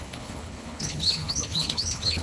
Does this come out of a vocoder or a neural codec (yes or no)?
yes